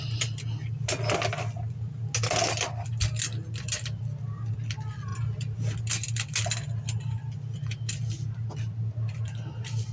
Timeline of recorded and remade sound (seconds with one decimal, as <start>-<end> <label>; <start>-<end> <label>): 0.0-9.9 recorded